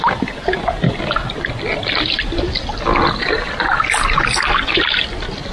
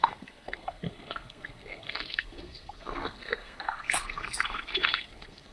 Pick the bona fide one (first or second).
first